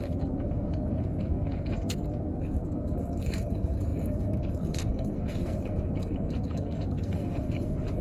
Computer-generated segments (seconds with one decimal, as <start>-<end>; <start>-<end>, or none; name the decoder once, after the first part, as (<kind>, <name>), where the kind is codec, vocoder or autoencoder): 0.0-8.0 (codec, SNAC)